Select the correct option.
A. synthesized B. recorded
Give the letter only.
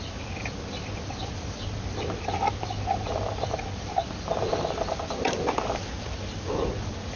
B